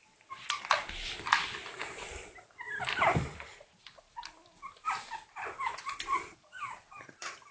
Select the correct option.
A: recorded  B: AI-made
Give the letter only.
A